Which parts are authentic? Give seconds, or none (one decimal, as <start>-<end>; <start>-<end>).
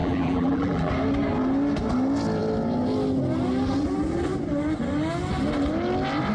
0.9-6.3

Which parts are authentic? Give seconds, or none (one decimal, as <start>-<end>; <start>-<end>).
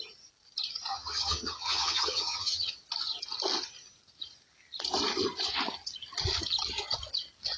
0.0-0.9; 2.7-7.6